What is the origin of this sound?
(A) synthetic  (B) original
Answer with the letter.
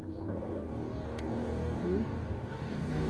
A